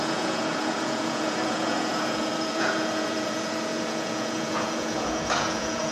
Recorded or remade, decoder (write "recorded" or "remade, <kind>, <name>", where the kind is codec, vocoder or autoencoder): remade, vocoder, Vocos